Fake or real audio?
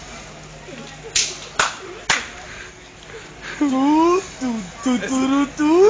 real